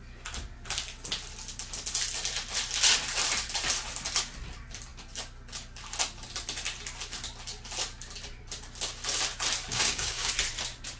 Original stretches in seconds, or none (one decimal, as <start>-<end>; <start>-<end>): 0.0-9.7; 10.3-11.0